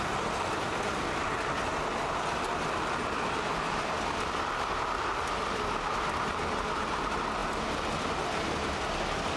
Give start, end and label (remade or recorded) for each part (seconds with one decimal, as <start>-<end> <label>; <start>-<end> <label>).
0.0-9.4 recorded